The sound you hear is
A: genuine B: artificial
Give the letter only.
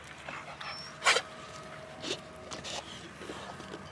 A